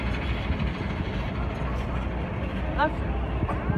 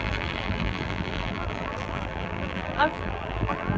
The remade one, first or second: second